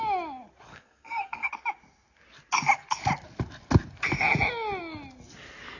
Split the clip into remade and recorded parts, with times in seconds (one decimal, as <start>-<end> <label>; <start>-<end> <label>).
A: 0.0-0.7 recorded; 0.7-1.5 remade; 1.5-5.8 recorded